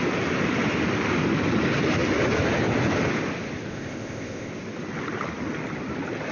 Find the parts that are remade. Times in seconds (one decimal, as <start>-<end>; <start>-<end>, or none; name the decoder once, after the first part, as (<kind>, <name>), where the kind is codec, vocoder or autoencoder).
3.7-4.5 (codec, ZipCodec)